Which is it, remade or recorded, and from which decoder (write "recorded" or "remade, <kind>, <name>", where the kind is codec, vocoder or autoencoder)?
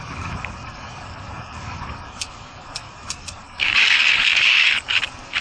remade, codec, DAC